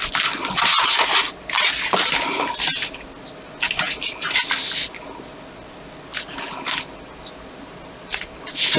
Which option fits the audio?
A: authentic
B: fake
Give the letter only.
A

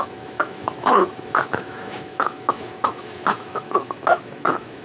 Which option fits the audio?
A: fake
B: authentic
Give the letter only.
A